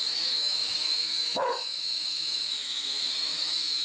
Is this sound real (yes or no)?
no